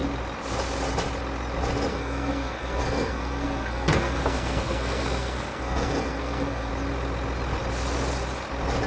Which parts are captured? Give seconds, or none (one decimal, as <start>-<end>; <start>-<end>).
0.0-1.9; 6.7-8.9